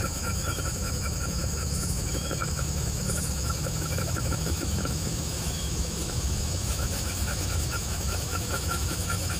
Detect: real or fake fake